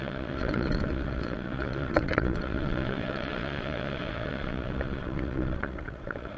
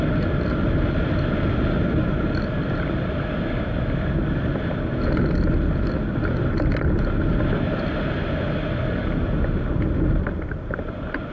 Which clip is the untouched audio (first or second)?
second